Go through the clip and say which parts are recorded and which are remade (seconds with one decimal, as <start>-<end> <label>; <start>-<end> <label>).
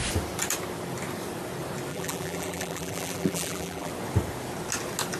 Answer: 0.0-1.9 recorded; 1.9-3.9 remade; 3.9-5.2 recorded